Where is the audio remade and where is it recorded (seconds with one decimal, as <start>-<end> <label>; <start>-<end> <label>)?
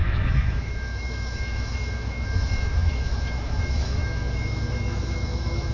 0.0-5.7 remade